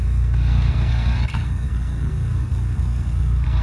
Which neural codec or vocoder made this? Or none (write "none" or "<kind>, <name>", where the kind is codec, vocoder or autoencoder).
codec, SNAC